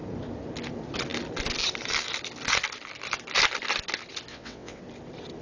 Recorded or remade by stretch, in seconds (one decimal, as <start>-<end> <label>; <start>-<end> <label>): 0.0-4.3 recorded; 4.3-4.8 remade; 4.8-5.4 recorded